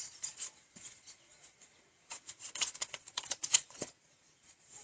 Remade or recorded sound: remade